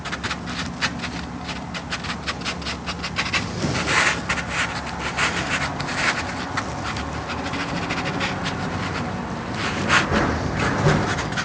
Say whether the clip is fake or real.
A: real